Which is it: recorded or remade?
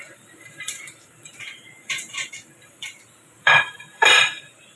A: remade